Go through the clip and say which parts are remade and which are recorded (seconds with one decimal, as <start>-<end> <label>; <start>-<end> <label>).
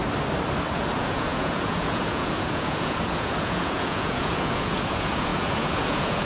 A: 0.0-0.7 recorded; 0.7-6.3 remade